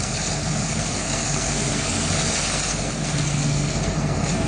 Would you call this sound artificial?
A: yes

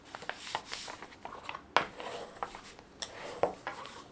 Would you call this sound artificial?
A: no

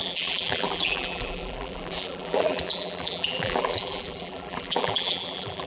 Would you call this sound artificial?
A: yes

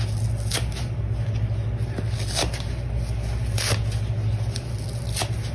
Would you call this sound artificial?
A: no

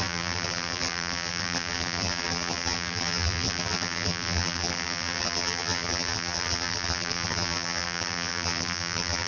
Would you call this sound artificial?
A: yes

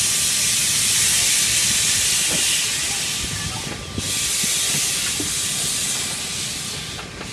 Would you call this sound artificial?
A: no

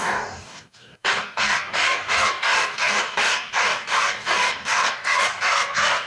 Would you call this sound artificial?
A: yes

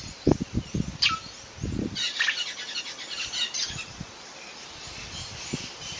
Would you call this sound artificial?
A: no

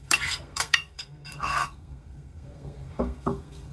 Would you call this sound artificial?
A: yes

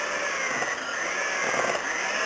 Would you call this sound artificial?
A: no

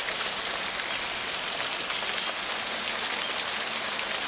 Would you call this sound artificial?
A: no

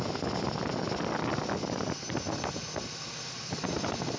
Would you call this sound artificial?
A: no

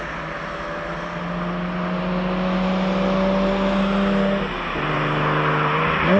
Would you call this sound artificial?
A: no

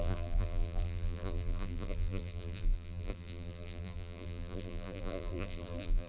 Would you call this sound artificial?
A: yes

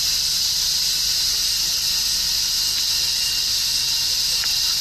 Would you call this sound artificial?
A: no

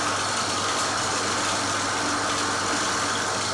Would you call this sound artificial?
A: no